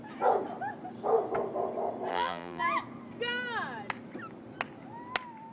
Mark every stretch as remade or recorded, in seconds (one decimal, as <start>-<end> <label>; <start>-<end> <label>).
0.0-2.1 recorded; 2.1-2.6 remade; 2.6-5.5 recorded